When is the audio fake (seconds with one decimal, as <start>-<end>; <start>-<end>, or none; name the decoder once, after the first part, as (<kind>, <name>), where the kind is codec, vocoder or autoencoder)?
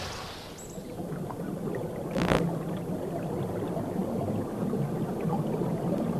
none